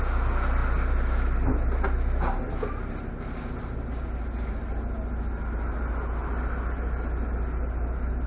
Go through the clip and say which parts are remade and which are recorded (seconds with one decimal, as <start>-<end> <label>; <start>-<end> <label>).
0.0-8.3 recorded